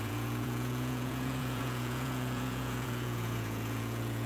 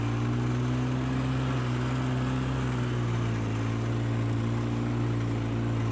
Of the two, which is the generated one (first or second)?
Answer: first